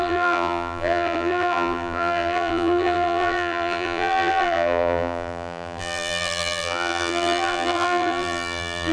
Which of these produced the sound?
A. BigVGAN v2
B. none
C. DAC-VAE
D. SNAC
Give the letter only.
A